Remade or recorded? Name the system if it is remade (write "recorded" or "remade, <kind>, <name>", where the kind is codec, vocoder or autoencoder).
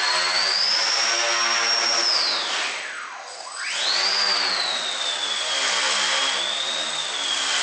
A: recorded